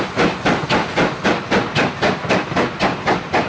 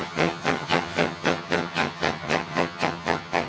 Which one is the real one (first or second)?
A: first